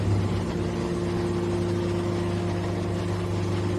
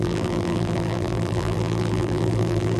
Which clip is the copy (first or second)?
second